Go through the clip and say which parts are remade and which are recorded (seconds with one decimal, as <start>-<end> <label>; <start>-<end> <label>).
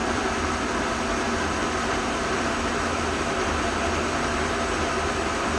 0.0-0.8 remade; 0.8-1.6 recorded; 1.6-2.4 remade; 2.4-5.6 recorded